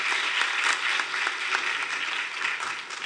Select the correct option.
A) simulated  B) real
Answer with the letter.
B